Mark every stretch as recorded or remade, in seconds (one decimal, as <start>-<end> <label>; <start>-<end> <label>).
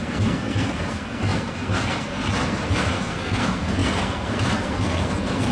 0.0-5.5 remade